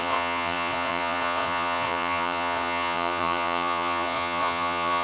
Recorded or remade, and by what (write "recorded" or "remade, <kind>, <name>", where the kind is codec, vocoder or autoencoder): remade, vocoder, Vocos